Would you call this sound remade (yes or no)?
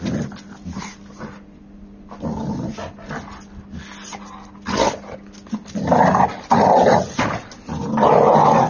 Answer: no